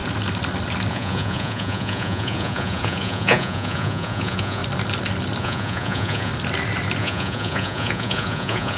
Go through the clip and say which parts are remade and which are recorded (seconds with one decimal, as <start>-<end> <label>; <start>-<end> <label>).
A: 0.0-0.9 recorded; 0.9-4.6 remade; 4.6-5.4 recorded; 5.4-6.3 remade; 6.3-7.0 recorded; 7.0-8.8 remade